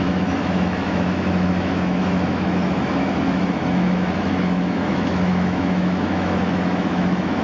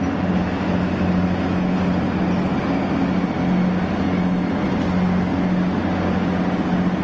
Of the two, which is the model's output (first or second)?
first